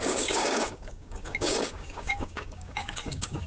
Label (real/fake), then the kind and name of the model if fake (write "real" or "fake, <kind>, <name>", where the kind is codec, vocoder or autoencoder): fake, codec, DAC